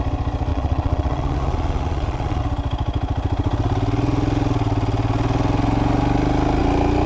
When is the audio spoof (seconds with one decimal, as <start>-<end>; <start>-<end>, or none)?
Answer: 0.5-2.4